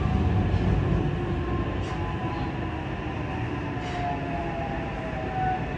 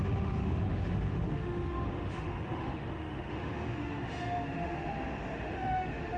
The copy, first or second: second